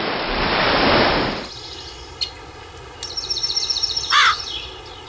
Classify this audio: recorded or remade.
recorded